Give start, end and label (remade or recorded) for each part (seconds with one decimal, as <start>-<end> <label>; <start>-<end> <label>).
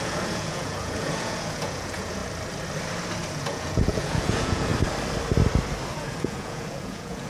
0.0-2.2 remade; 2.2-3.3 recorded; 3.3-4.7 remade; 4.7-5.9 recorded; 5.9-7.3 remade